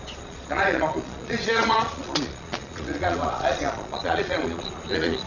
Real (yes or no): no